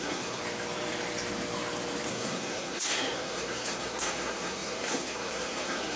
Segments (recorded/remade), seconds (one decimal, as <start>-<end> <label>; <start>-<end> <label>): 0.0-0.4 remade; 0.4-2.1 recorded; 2.1-6.0 remade